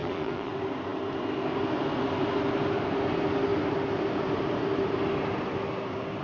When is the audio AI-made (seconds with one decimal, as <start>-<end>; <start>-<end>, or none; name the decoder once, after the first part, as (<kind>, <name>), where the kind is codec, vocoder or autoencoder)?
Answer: 0.0-0.5 (vocoder, Vocos)